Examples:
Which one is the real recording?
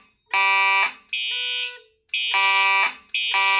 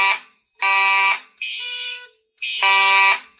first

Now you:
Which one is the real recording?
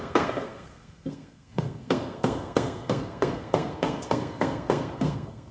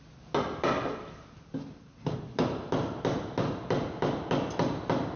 second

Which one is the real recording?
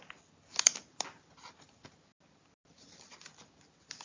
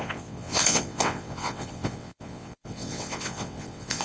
first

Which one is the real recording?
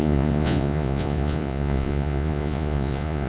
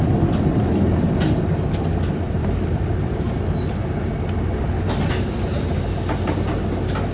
second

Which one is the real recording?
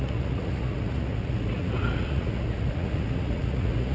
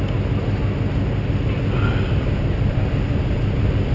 second